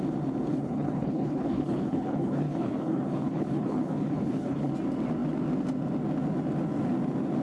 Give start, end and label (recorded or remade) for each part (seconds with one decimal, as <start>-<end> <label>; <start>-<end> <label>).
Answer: 0.0-0.5 recorded; 0.5-4.7 remade; 4.7-7.4 recorded